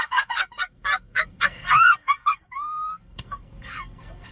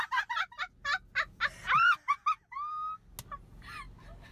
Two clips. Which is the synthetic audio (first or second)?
first